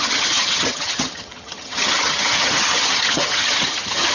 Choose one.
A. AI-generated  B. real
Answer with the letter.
A